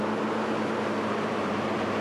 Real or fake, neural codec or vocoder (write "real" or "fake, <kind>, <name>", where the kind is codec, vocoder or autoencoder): fake, vocoder, BigVGAN v2